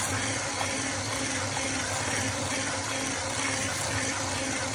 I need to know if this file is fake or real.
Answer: real